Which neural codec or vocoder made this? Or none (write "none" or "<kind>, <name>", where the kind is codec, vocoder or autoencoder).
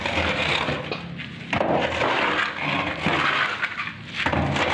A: none